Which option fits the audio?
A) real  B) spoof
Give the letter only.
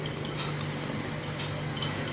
A